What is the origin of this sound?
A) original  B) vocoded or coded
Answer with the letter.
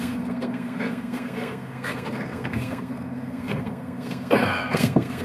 B